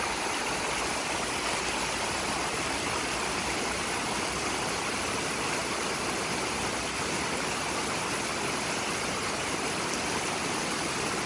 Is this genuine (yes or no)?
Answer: yes